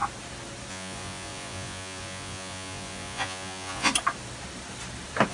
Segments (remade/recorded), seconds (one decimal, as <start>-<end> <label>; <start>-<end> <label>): 0.0-0.7 recorded; 0.7-3.9 remade; 3.9-5.3 recorded